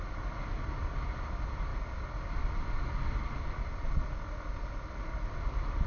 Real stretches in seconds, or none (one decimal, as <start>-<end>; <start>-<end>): 0.0-5.9